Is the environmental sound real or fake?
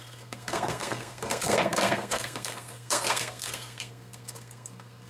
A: fake